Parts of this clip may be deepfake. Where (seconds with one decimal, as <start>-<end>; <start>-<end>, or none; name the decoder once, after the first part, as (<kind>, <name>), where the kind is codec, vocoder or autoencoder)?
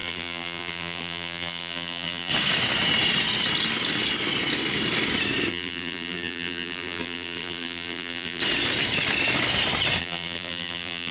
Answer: 0.0-2.3 (vocoder, BigVGAN v2); 5.5-8.4; 10.0-11.1